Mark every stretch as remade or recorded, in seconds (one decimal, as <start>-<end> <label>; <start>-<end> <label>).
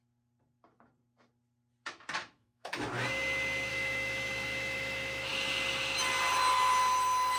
0.0-2.2 recorded; 2.2-2.9 remade; 2.9-3.7 recorded; 3.7-5.3 remade; 5.3-7.4 recorded